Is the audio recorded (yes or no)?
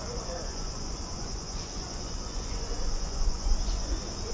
no